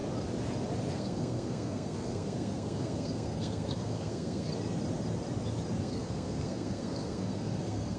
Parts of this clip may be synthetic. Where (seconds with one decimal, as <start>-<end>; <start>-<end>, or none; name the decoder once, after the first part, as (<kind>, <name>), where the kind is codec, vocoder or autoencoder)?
0.9-4.5 (codec, SNAC); 5.8-8.0